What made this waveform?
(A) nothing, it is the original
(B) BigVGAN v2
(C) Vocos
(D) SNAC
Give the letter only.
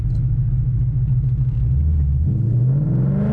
A